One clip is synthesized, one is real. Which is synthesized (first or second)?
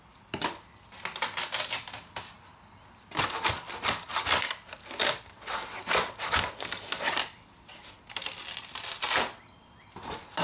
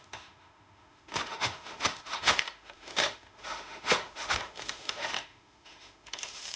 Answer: second